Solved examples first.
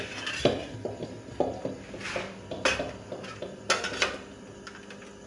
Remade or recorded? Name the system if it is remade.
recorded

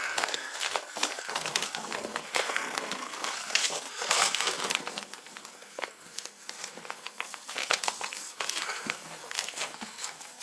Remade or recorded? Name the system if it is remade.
remade, codec, SNAC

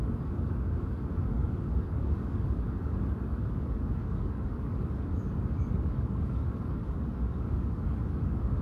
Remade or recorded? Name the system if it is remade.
remade, codec, DAC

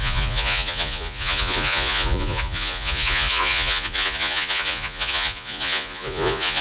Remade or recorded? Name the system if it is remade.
remade, vocoder, Vocos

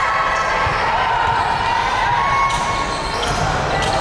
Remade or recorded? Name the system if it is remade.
recorded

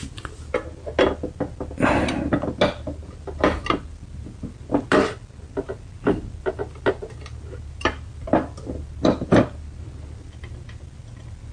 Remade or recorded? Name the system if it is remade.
recorded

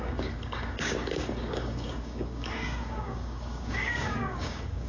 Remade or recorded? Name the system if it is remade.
remade, codec, DAC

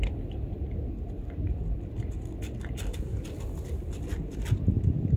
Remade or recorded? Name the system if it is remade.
recorded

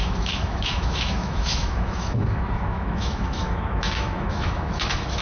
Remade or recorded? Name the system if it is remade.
remade, autoencoder, DAC-VAE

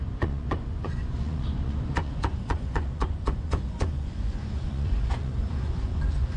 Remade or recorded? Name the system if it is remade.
remade, vocoder, Vocos